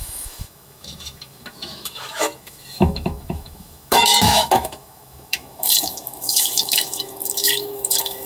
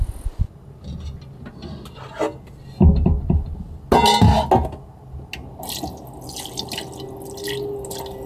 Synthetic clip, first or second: first